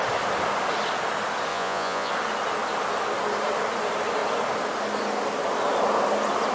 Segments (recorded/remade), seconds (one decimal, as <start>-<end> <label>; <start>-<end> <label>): 0.0-1.5 recorded; 1.5-2.1 remade; 2.1-6.5 recorded